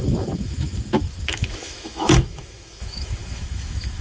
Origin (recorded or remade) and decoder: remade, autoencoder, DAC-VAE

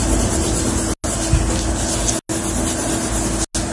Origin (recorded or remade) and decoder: recorded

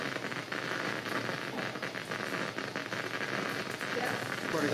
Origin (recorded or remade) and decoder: recorded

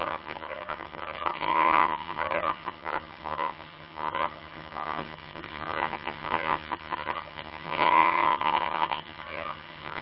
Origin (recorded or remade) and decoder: remade, vocoder, HiFi-GAN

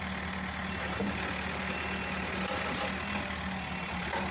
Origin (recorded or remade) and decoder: recorded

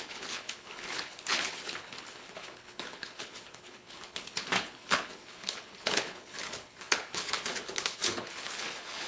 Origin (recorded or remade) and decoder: remade, codec, HILCodec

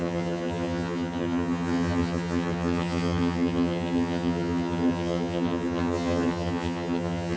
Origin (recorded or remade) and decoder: remade, vocoder, HiFi-GAN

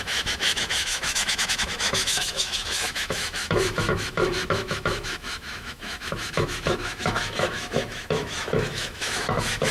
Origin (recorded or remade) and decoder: remade, autoencoder, DAC-VAE